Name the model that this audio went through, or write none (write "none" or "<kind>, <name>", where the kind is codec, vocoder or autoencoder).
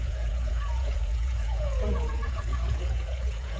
vocoder, Vocos